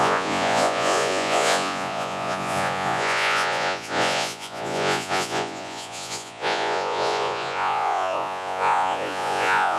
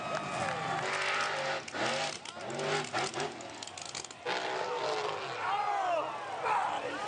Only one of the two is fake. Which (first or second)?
first